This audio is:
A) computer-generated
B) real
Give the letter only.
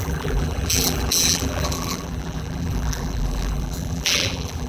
A